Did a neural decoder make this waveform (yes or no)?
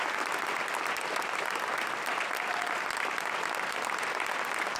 no